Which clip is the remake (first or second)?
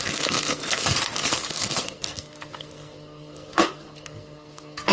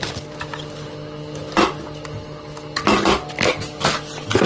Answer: first